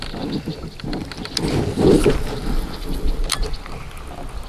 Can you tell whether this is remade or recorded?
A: recorded